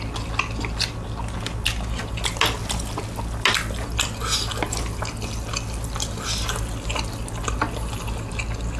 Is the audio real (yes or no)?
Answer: yes